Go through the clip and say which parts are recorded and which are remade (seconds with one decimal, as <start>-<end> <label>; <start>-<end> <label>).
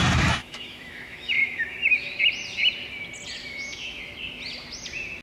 0.0-0.4 recorded; 0.4-2.2 remade; 2.2-3.4 recorded; 3.4-4.0 remade; 4.0-5.2 recorded